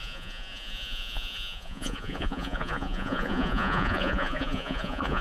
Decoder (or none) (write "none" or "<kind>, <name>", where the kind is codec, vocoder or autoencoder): vocoder, Vocos